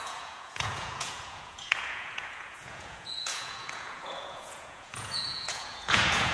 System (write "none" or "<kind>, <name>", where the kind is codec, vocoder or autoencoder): vocoder, Vocos